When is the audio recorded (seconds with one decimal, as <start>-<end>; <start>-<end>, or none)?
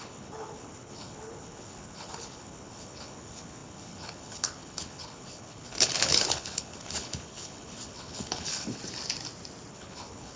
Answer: 8.8-9.7